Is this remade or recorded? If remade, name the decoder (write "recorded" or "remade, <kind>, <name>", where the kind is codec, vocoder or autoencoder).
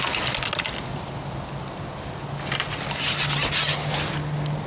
recorded